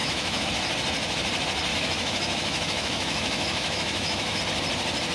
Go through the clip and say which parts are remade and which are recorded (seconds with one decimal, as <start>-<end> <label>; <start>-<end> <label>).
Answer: 0.0-0.5 remade; 0.5-1.7 recorded; 1.7-4.4 remade; 4.4-5.1 recorded